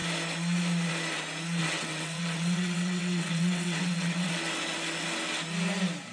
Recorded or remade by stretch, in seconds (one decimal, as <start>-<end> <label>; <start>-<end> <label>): 0.0-1.6 recorded; 1.6-4.3 remade; 4.3-6.1 recorded